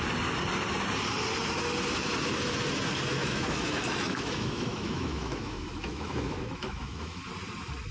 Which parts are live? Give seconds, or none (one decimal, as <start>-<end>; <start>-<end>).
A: 0.0-3.2; 7.2-7.9